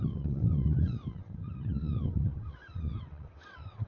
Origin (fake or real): fake